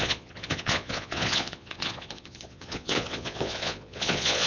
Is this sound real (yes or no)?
no